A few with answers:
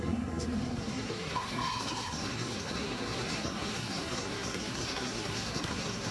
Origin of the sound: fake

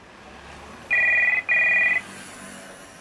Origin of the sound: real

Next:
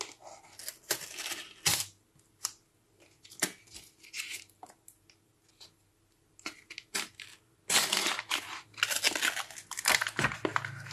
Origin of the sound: real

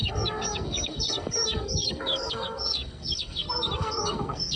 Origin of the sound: fake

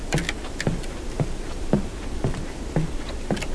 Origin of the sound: real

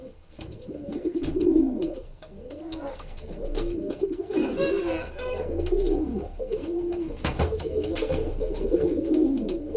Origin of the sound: fake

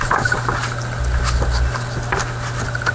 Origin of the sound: real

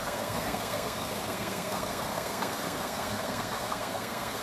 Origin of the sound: fake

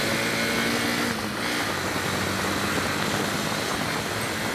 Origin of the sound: real